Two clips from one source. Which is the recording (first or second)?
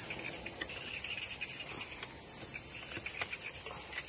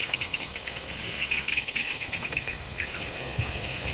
first